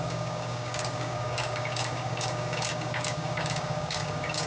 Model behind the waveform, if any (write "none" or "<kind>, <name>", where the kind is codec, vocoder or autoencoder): codec, DAC